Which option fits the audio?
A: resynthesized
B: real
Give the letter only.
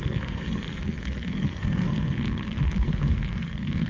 A